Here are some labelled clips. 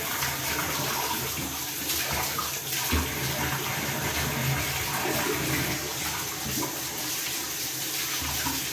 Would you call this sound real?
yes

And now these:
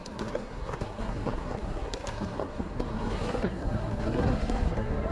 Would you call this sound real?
no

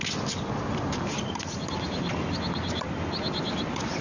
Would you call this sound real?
yes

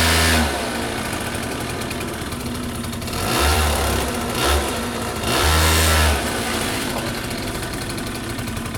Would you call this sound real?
no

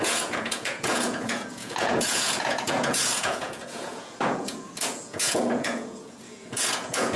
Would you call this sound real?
no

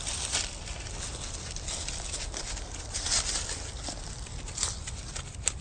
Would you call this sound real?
yes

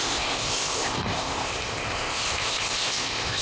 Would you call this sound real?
no